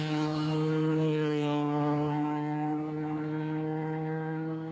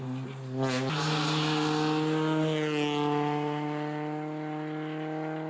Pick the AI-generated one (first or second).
first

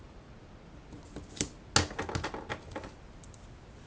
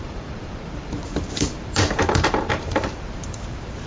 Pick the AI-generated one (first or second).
second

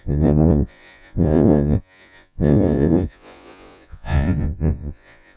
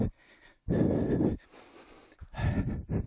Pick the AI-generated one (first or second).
first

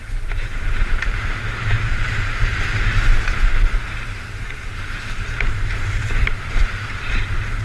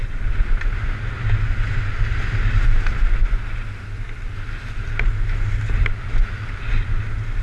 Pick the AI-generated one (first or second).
first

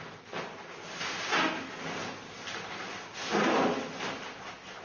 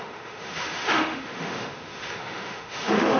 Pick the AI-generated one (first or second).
second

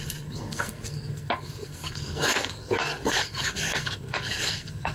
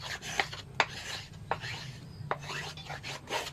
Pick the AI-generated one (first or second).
first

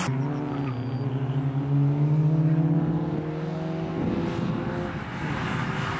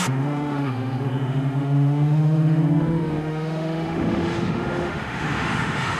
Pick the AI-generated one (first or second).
second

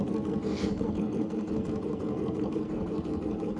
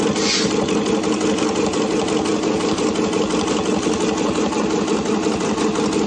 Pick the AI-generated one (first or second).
first